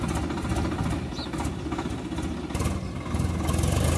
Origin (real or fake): real